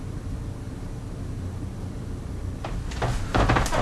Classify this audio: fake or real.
real